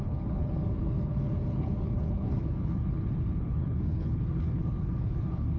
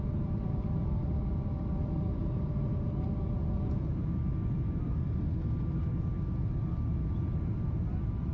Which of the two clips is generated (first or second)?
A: first